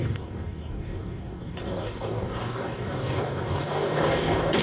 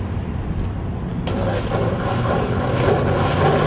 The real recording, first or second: second